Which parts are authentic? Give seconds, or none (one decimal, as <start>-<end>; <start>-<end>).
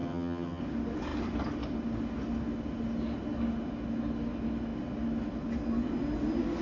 0.6-6.6